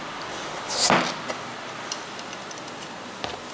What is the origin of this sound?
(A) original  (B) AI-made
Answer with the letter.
A